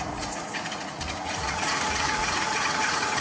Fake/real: fake